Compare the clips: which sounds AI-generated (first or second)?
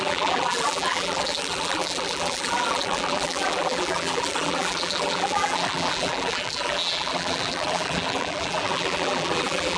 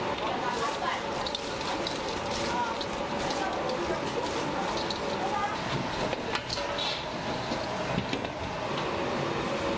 first